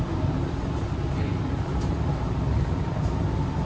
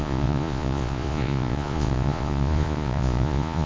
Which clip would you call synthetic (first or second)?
second